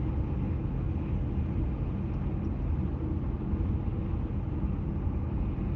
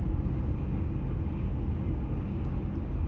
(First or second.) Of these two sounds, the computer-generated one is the second